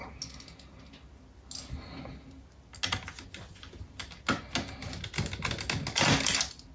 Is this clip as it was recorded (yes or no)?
yes